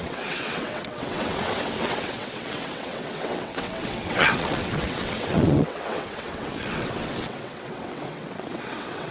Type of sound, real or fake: fake